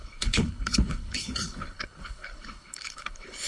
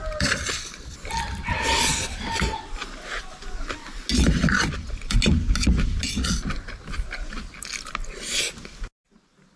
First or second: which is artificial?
first